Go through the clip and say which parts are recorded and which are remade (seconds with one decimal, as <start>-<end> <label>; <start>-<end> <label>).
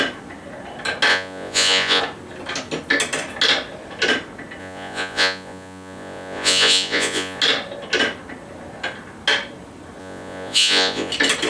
0.0-1.1 recorded; 1.1-2.0 remade; 2.0-4.6 recorded; 4.6-7.4 remade; 7.4-10.0 recorded; 10.0-11.1 remade; 11.1-11.5 recorded